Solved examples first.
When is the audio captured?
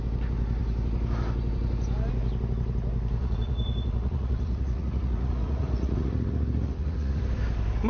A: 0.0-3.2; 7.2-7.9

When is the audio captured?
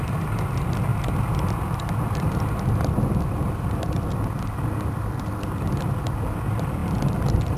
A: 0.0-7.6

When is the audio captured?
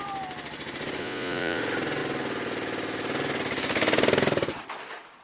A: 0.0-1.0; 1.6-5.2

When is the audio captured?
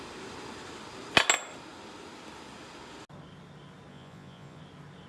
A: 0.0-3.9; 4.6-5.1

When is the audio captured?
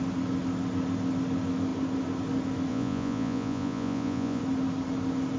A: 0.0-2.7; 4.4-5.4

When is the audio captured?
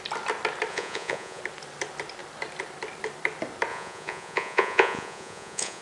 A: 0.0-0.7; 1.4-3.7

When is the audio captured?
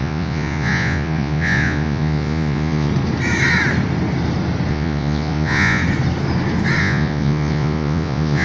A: 2.9-4.7; 5.8-6.8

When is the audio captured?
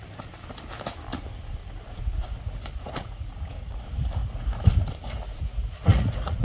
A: 0.0-1.6; 3.8-4.2; 4.7-5.3